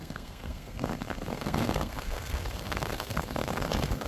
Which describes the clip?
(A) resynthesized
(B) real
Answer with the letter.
A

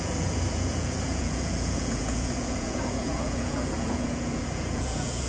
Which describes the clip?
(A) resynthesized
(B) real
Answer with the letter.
A